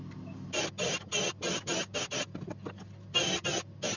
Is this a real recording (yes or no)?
yes